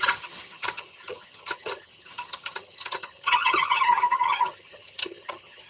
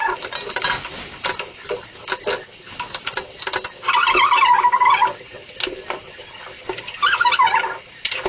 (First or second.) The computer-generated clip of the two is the first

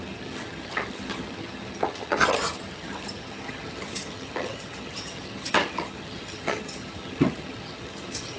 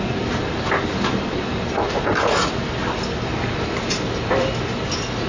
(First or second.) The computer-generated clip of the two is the first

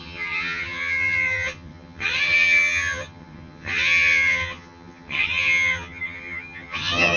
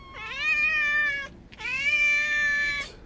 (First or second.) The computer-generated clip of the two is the first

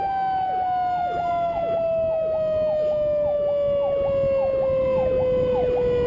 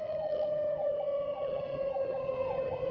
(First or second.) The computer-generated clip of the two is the second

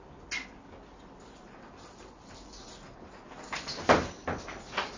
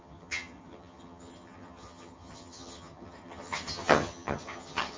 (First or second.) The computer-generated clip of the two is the second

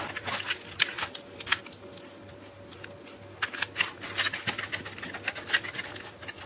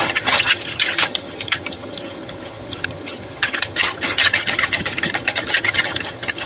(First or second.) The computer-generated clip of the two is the second